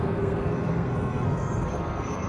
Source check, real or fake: fake